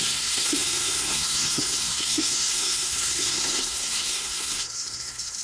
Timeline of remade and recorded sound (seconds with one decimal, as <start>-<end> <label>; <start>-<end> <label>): 0.0-5.4 remade

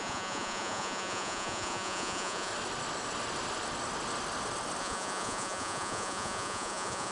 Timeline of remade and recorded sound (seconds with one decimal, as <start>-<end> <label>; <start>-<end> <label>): 0.0-2.5 remade; 2.5-4.8 recorded; 4.8-7.1 remade

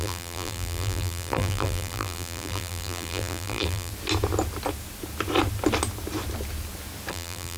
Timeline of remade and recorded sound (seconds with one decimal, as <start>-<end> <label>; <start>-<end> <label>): 0.0-3.9 remade; 3.9-7.1 recorded; 7.1-7.6 remade